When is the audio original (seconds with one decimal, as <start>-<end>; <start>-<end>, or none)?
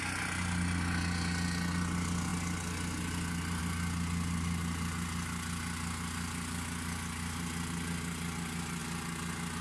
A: 0.0-9.6